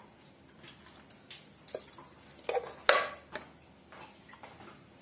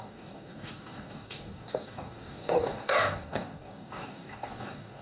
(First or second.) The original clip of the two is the first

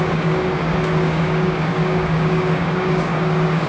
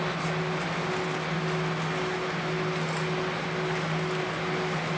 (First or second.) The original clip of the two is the second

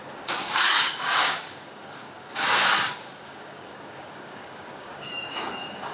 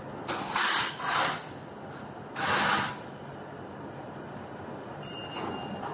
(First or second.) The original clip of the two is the second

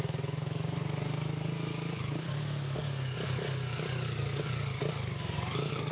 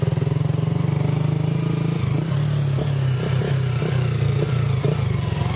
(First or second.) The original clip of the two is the second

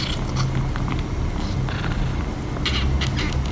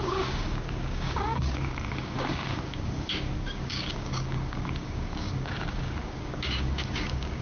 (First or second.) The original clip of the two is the first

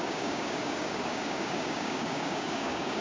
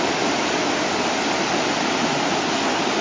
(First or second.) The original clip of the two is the second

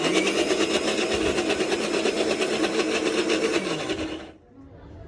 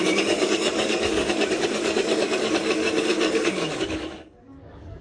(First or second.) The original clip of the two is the first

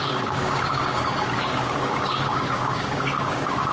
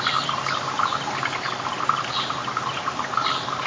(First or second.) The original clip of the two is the second